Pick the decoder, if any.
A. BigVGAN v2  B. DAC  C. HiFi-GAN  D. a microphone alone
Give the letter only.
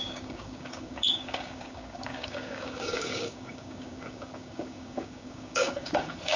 B